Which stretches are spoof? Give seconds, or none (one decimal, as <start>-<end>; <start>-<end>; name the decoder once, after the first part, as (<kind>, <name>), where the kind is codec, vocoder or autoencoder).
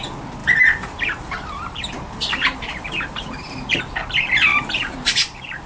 0.4-3.8 (vocoder, BigVGAN v2); 4.5-5.7